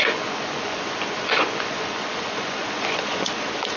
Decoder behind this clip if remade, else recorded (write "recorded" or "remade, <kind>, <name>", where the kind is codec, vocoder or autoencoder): remade, vocoder, Vocos